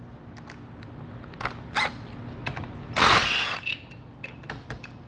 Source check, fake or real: real